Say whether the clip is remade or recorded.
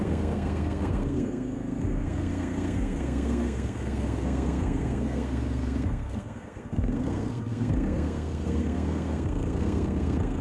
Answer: remade